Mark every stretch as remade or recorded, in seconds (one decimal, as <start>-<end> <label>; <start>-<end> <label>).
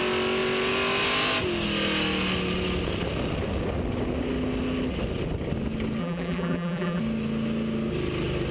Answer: 0.0-6.0 recorded; 6.0-7.0 remade; 7.0-8.5 recorded